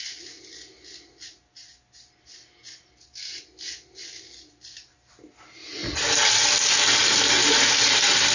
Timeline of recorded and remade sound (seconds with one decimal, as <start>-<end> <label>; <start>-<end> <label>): 0.0-8.3 recorded